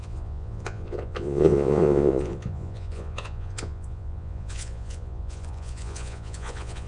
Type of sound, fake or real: fake